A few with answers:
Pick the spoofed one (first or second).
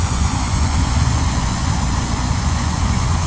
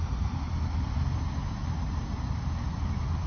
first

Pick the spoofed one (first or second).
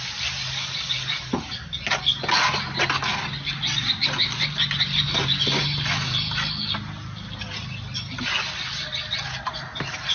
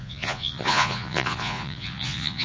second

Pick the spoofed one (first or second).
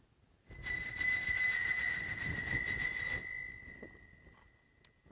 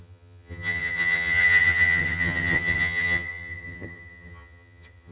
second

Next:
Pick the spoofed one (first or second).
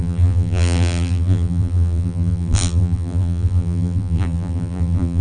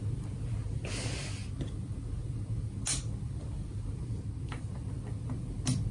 first